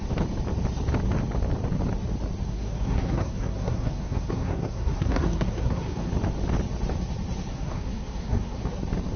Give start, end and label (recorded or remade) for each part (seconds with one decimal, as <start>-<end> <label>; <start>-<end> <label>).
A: 0.0-2.5 recorded; 2.5-6.1 remade; 6.1-7.5 recorded; 7.5-8.6 remade; 8.6-9.2 recorded